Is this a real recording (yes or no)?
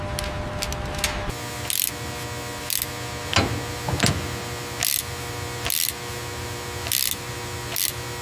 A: yes